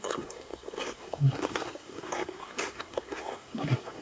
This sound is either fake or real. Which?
fake